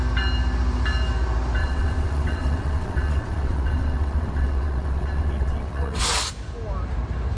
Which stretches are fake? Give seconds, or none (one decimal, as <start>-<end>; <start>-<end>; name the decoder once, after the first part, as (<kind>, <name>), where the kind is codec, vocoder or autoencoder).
1.6-6.0 (vocoder, WaveNeXt)